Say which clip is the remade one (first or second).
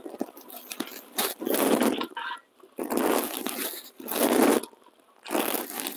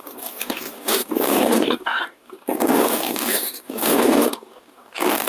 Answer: second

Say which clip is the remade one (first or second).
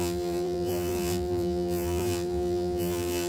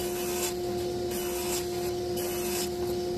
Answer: first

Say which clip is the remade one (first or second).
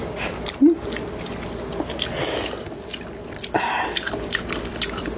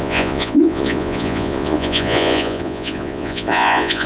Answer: second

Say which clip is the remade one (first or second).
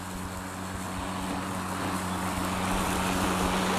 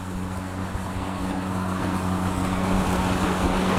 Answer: second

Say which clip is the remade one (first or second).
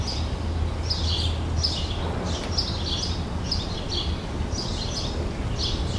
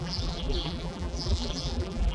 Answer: second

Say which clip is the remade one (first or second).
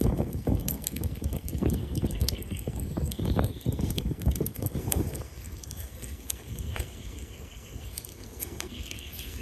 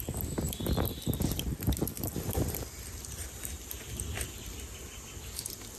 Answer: first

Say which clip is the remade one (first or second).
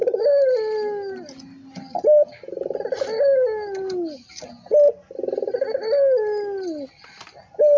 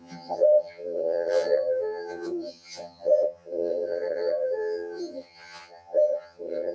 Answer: second